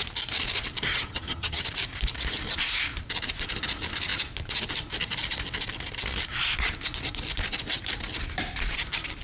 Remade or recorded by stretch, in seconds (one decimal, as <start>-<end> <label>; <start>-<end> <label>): 0.0-0.9 recorded; 0.9-1.7 remade; 1.7-9.2 recorded